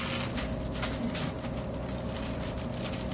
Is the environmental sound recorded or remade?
recorded